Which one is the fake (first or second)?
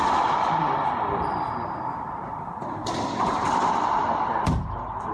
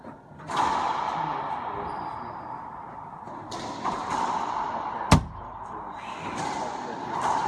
first